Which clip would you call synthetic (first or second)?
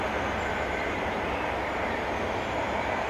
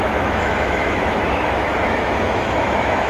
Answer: second